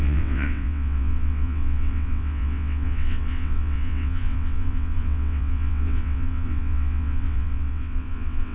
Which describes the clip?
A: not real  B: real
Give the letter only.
A